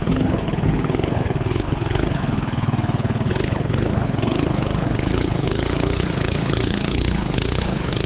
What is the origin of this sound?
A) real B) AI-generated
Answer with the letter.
B